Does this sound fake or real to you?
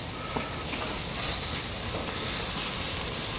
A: real